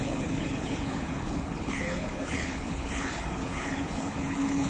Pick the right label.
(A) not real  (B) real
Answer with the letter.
A